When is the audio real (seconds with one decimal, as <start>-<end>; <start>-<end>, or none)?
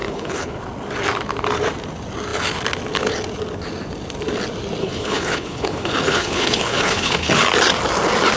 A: 0.6-4.8; 7.3-8.4